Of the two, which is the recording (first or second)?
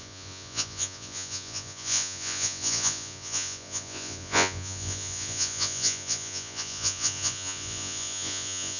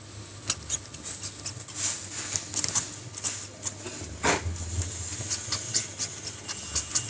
second